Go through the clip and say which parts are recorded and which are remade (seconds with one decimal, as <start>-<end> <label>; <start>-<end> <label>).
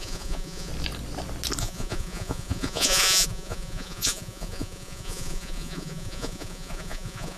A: 0.0-0.7 remade; 0.7-1.6 recorded; 1.6-7.4 remade